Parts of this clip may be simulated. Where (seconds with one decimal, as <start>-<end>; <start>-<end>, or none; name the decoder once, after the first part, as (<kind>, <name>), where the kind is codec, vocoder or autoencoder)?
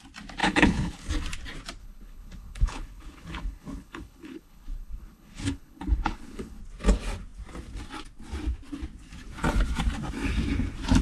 0.4-1.1 (codec, HILCodec); 1.8-6.6